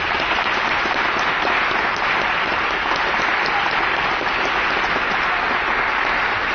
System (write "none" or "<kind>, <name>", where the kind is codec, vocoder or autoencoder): none